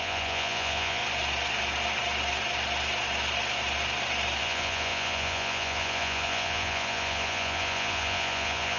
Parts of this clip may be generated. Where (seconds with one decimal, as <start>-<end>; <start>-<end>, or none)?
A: 0.0-1.0; 4.4-8.8

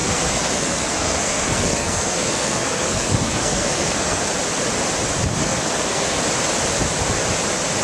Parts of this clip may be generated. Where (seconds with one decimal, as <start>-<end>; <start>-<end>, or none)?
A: 0.0-4.2; 5.4-6.2

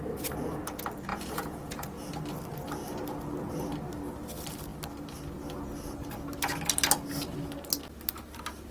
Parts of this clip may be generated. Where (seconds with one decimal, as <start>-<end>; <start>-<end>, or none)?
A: 1.1-2.1